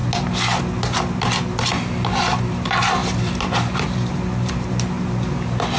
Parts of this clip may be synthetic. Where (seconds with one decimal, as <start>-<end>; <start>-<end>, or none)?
3.0-4.7